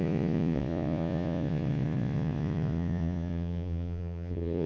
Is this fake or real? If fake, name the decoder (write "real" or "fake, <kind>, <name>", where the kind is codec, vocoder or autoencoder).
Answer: fake, vocoder, Vocos